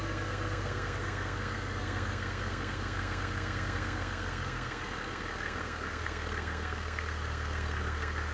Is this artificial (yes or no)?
yes